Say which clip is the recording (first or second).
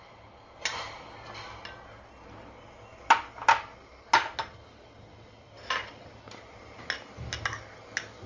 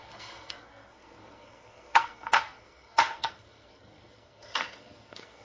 first